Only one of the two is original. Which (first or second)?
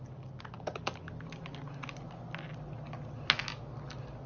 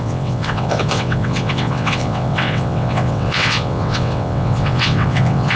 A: first